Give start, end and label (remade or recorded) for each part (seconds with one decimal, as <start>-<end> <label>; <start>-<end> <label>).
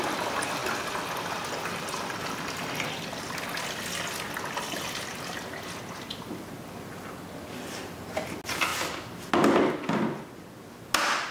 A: 0.0-11.3 recorded